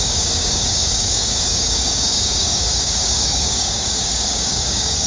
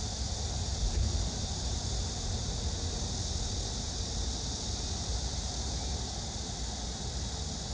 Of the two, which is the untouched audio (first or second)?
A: second